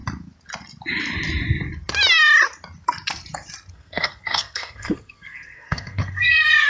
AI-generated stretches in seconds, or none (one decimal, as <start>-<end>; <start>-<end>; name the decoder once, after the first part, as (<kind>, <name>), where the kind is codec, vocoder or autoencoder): 3.7-6.7 (codec, SNAC)